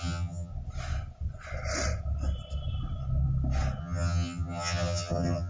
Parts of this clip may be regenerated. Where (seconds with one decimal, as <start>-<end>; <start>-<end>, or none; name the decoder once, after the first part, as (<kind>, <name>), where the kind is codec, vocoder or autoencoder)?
0.0-0.5 (vocoder, HiFi-GAN); 3.8-5.5